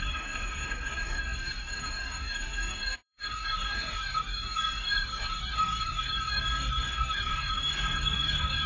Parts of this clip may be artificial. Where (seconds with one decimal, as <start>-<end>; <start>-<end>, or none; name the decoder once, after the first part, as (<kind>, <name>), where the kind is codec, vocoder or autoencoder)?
0.0-8.7 (codec, DAC)